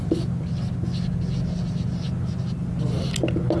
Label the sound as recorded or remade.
recorded